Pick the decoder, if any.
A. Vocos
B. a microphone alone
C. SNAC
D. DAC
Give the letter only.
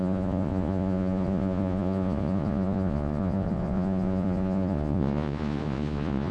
A